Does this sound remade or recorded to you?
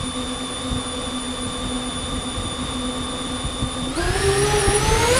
recorded